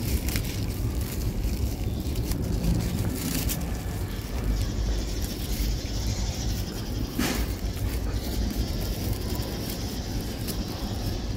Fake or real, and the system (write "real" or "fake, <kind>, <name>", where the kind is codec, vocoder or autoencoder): fake, vocoder, BigVGAN v2